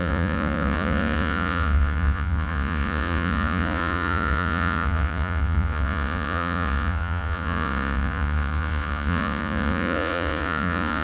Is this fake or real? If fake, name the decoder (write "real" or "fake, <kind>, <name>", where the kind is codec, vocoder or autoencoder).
fake, vocoder, Vocos